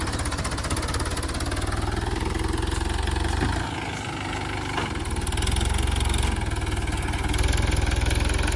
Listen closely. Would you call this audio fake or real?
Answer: real